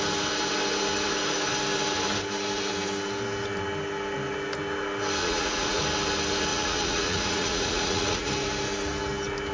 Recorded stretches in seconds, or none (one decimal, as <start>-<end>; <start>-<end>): 0.0-5.2; 5.8-6.5; 8.3-9.5